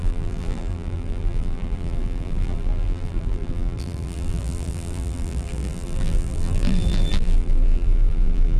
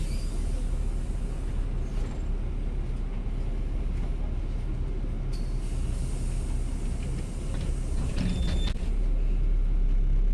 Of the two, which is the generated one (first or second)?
first